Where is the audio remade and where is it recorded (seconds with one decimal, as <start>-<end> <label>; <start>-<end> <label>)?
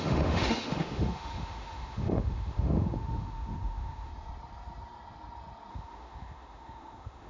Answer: 0.0-4.1 remade; 4.1-5.7 recorded; 5.7-7.3 remade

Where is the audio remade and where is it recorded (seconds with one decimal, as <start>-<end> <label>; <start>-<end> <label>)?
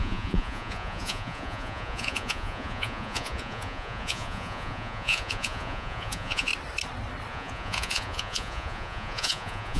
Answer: 0.0-6.5 remade; 6.5-7.3 recorded; 7.3-9.8 remade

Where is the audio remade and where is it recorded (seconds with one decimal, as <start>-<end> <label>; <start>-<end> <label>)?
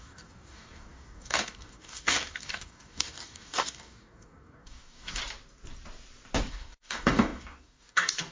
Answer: 0.0-5.2 remade; 5.2-6.5 recorded; 6.5-8.3 remade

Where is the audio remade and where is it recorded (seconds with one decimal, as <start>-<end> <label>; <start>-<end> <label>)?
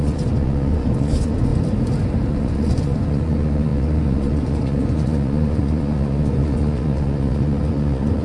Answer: 0.0-1.5 remade; 1.5-2.3 recorded; 2.3-8.2 remade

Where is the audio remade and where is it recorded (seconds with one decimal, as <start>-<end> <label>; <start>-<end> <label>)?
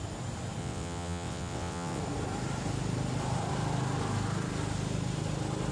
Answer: 0.0-0.6 recorded; 0.6-2.0 remade; 2.0-5.7 recorded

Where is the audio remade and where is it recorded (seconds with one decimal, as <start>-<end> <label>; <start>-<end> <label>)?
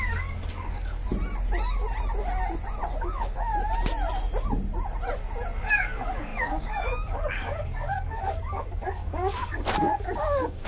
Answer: 0.0-1.0 remade; 1.0-3.0 recorded; 3.0-3.5 remade; 3.5-5.6 recorded; 5.6-10.7 remade